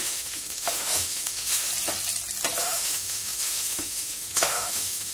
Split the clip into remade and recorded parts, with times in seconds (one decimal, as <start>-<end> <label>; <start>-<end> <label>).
0.0-1.7 remade; 1.7-2.6 recorded; 2.6-5.1 remade